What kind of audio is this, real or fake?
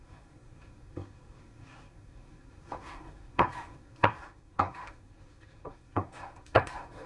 fake